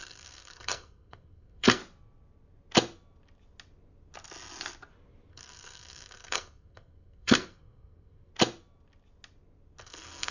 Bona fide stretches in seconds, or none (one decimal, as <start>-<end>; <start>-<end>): 1.8-5.3; 8.3-9.8